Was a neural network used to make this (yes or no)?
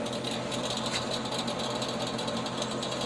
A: no